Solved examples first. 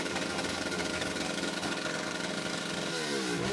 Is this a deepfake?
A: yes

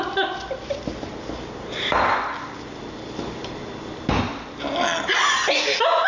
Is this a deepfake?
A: no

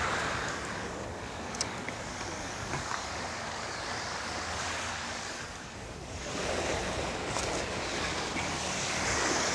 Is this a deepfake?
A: yes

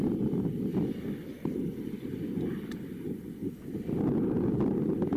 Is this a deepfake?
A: no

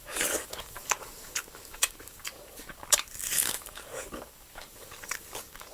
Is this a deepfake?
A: yes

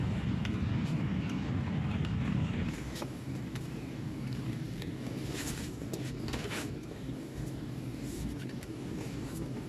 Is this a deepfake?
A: yes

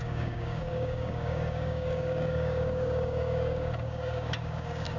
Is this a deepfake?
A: yes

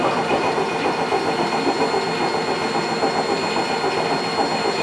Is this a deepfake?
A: no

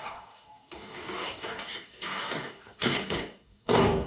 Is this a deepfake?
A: yes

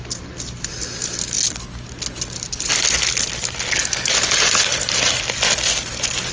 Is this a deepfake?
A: no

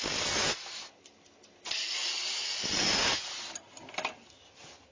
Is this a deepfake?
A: no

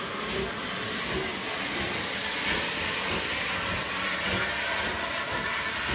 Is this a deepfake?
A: no